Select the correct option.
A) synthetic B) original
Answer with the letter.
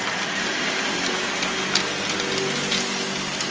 B